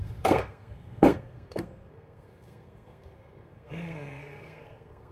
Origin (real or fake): fake